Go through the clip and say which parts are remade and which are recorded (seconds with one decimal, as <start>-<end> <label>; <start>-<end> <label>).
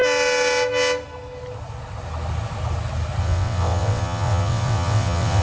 0.0-3.2 recorded; 3.2-5.4 remade